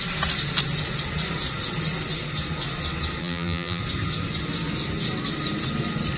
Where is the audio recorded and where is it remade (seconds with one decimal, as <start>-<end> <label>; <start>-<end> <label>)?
0.0-3.2 recorded; 3.2-3.8 remade; 3.8-6.2 recorded